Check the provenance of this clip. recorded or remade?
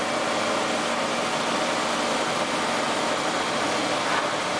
recorded